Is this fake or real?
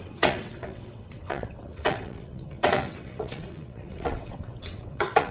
fake